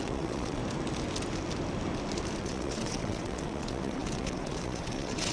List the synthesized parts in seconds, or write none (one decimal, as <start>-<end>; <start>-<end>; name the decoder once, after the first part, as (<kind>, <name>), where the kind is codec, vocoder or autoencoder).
0.0-0.6 (vocoder, WaveNeXt); 2.4-5.3